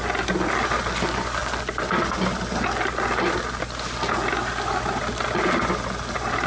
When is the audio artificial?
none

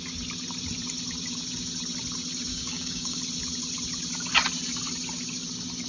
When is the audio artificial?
2.5-3.2 (codec, DAC)

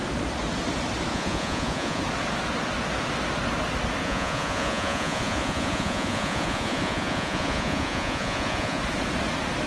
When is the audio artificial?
1.1-2.0 (vocoder, Vocos); 4.0-8.8

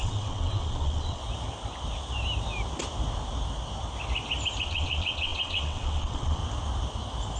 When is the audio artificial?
0.0-1.2 (vocoder, WaveNeXt); 4.6-6.4

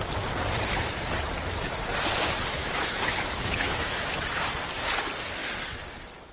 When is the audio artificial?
2.6-4.5 (autoencoder, DAC-VAE)

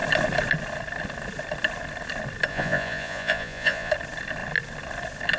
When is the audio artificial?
2.5-3.9 (vocoder, Vocos)

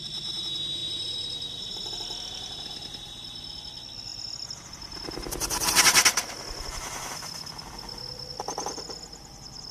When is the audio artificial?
none

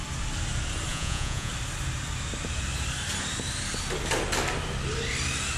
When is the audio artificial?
0.9-1.5 (vocoder, Vocos)